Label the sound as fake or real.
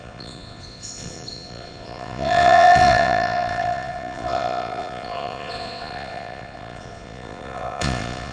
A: fake